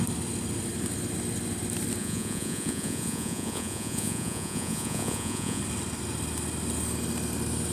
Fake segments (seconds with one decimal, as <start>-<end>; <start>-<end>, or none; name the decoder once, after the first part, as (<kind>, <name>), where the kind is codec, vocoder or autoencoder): 2.0-5.6 (vocoder, Vocos)